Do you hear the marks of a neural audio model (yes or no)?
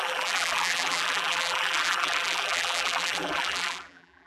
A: yes